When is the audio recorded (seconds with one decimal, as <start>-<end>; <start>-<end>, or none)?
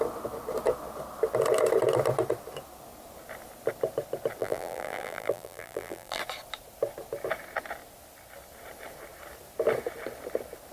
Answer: 0.0-4.4; 6.2-10.7